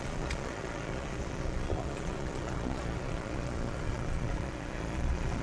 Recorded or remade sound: remade